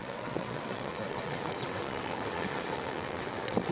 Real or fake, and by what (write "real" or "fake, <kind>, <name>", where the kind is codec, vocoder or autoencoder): fake, vocoder, WaveNeXt